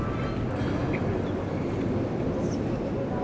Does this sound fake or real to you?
real